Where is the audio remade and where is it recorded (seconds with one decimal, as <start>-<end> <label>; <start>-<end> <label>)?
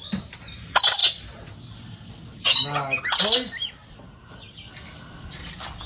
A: 0.0-5.9 recorded